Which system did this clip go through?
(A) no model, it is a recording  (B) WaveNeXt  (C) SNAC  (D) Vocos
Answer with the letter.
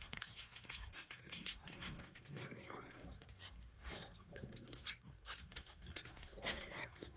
C